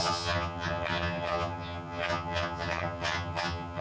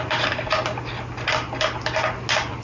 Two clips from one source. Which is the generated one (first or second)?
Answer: first